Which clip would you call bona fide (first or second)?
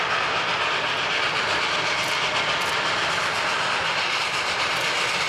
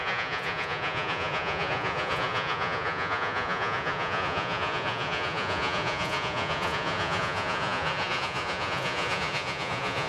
first